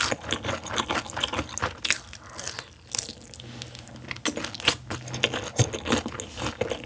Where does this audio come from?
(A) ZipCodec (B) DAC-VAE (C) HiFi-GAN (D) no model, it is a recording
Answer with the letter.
D